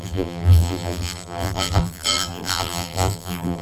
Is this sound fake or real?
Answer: fake